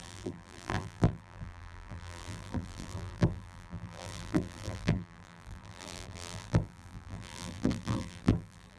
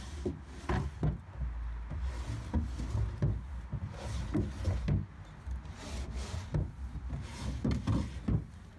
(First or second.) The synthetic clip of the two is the first